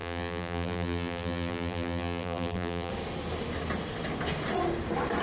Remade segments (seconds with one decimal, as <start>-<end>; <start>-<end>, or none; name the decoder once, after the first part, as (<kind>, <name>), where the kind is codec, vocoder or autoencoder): 0.0-2.9 (vocoder, BigVGAN v2)